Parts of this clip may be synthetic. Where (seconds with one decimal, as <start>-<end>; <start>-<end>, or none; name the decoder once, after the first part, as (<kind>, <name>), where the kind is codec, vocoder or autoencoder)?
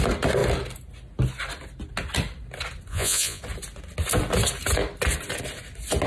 2.9-3.4 (vocoder, Vocos)